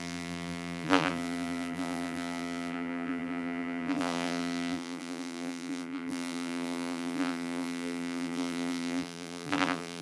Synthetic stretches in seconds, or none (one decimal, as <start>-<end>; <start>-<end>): 0.0-10.0